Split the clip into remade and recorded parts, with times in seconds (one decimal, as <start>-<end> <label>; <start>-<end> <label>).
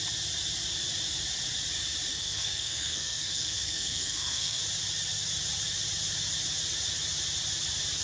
0.0-2.1 recorded; 2.1-4.6 remade; 4.6-8.0 recorded